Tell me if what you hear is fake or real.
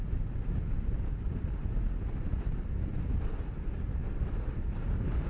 real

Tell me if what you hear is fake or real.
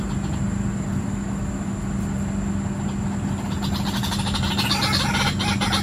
real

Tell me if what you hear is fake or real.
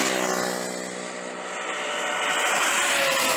real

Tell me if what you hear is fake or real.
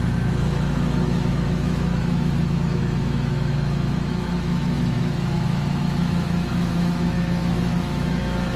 fake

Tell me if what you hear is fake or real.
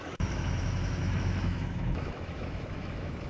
fake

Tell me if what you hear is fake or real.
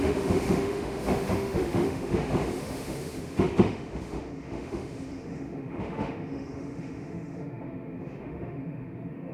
fake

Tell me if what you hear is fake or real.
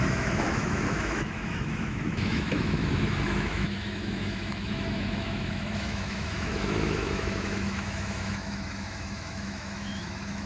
fake